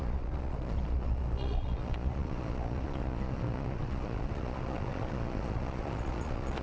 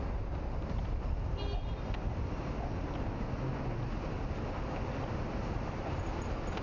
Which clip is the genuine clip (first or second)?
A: second